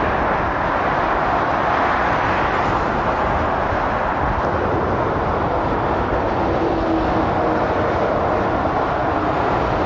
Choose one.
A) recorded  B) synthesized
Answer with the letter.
A